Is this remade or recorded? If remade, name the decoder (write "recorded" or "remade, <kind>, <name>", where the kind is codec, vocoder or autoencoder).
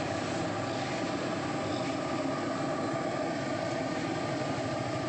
recorded